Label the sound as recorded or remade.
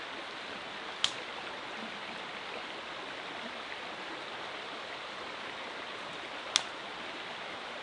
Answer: recorded